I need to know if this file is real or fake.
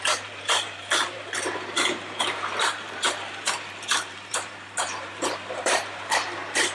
fake